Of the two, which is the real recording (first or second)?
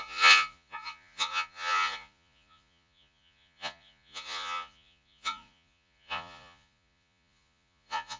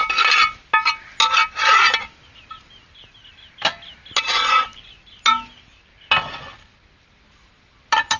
second